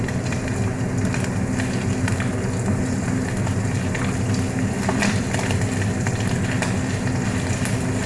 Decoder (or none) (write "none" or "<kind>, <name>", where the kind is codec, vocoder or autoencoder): none